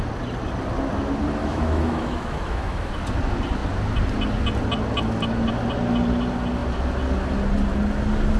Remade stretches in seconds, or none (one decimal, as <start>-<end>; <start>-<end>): 1.4-2.9